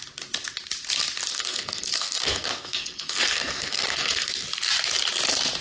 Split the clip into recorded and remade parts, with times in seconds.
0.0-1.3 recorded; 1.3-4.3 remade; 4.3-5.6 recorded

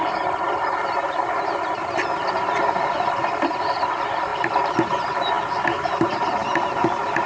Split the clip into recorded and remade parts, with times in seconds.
0.0-6.4 remade; 6.4-7.3 recorded

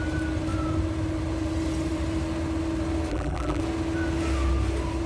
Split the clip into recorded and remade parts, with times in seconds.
0.0-3.1 recorded; 3.1-3.6 remade; 3.6-5.1 recorded

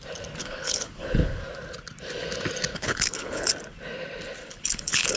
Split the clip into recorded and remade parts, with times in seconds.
0.0-0.4 recorded; 0.4-1.4 remade; 1.4-2.7 recorded; 2.7-3.5 remade; 3.5-4.4 recorded; 4.4-5.2 remade

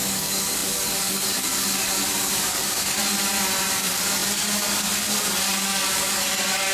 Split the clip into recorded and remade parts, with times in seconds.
0.0-3.0 remade; 3.0-3.7 recorded; 3.7-6.7 remade

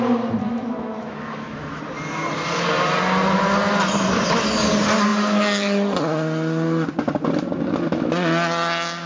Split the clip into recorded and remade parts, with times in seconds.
0.0-0.4 recorded; 0.4-1.8 remade; 1.8-9.1 recorded

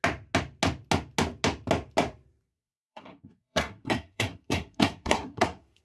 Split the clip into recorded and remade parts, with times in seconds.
0.0-2.5 recorded; 2.5-5.8 remade